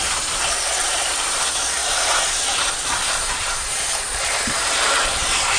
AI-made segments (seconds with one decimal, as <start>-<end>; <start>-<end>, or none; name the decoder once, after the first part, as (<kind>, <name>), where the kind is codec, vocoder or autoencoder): 0.8-1.4 (vocoder, BigVGAN v2); 1.8-5.6